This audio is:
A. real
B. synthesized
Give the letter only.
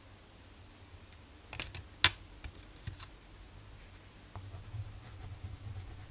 A